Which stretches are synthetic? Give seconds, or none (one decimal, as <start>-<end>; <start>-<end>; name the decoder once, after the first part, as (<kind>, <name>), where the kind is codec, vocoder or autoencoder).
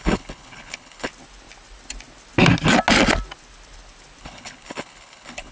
0.0-1.1 (codec, HILCodec); 4.2-5.5